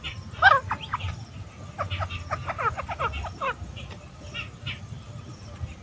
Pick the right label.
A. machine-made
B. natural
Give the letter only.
B